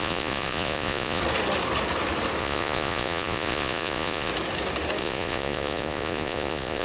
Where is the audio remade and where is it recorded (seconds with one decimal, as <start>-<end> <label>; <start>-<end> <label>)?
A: 0.0-1.2 remade; 1.2-2.4 recorded; 2.4-4.3 remade; 4.3-5.0 recorded; 5.0-6.8 remade